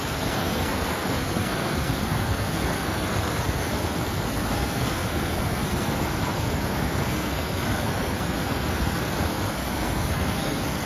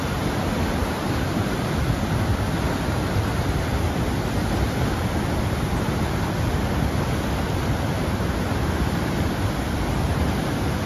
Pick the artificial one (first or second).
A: first